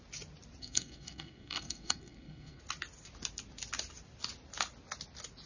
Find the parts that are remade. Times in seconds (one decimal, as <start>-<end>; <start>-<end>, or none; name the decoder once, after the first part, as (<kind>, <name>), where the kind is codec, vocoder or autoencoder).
0.6-2.6 (codec, SNAC)